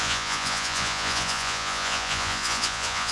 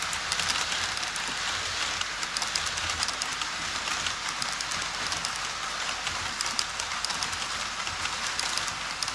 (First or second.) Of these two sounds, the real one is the second